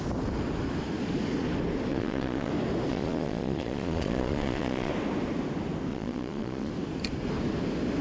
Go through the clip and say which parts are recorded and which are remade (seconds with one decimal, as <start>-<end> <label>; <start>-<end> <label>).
0.0-1.9 recorded; 1.9-2.5 remade; 2.5-2.9 recorded; 2.9-4.9 remade; 4.9-5.9 recorded; 5.9-6.7 remade; 6.7-8.0 recorded